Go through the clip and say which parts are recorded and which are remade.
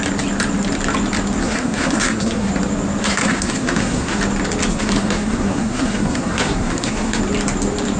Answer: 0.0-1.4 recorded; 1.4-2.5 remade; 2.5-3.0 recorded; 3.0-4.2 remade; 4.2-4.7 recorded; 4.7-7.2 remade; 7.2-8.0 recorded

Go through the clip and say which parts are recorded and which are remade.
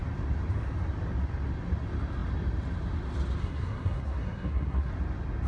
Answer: 0.0-3.4 recorded; 3.4-4.9 remade; 4.9-5.5 recorded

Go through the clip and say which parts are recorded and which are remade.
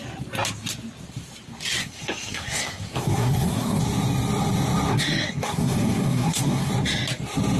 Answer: 0.0-1.8 recorded; 1.8-3.8 remade; 3.8-4.9 recorded; 4.9-6.7 remade; 6.7-7.6 recorded